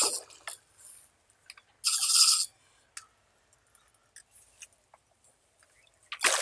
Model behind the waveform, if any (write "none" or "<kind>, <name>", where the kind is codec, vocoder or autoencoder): none